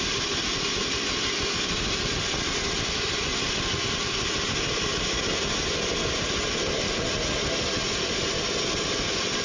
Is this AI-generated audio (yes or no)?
no